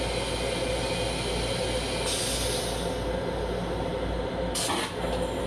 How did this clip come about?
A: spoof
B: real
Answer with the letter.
B